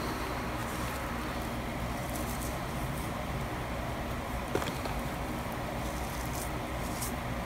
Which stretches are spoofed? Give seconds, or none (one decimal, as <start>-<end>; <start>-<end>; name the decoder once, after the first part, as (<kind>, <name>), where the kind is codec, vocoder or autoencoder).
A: 0.6-1.1 (vocoder, BigVGAN v2); 2.0-5.7